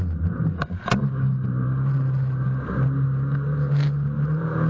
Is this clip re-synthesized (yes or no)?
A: no